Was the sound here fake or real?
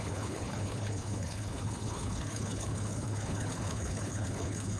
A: fake